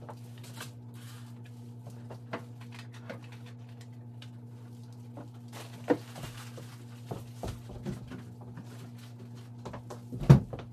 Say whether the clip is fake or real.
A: real